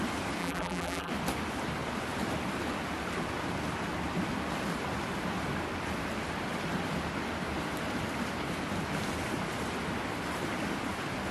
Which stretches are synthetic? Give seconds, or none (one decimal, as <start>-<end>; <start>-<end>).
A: 0.4-1.1